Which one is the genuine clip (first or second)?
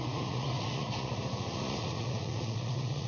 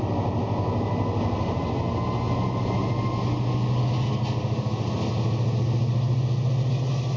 second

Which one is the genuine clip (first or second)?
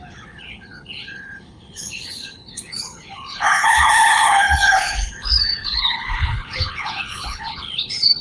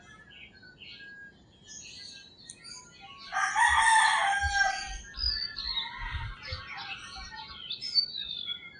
second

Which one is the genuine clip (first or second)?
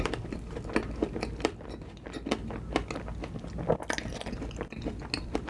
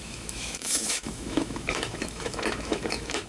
first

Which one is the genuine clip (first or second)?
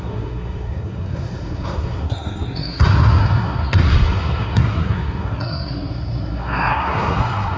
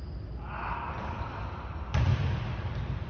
second